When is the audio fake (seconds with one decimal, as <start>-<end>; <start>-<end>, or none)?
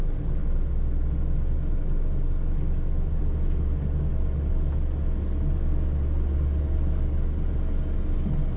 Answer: none